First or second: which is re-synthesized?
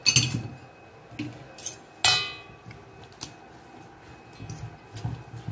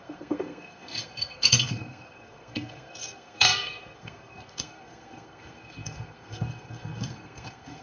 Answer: second